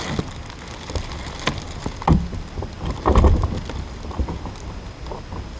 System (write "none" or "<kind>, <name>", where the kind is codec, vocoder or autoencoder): none